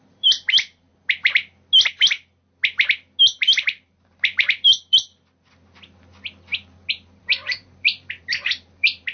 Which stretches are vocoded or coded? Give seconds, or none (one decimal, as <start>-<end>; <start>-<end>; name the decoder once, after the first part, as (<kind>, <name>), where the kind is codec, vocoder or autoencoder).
0.0-0.9 (vocoder, BigVGAN v2); 3.2-5.1; 6.9-9.1